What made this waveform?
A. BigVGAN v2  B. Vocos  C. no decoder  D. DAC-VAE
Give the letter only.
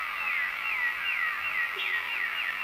A